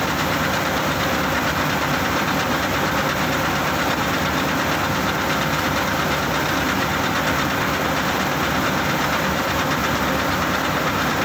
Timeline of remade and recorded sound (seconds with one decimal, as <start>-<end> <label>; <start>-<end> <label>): 0.0-11.2 recorded